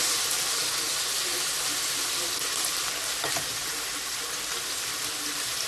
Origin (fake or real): real